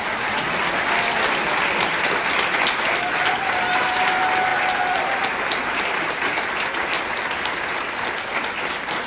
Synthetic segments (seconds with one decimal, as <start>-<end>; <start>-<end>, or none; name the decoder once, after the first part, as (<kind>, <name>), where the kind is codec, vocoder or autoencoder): none